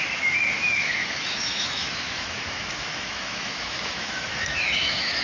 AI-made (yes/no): yes